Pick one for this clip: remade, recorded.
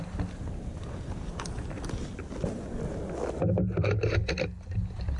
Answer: recorded